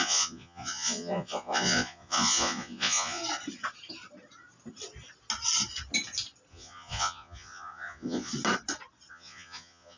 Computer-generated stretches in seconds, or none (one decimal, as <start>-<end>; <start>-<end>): 0.0-3.2; 6.5-8.3; 9.1-10.0